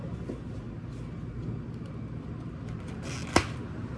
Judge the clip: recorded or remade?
recorded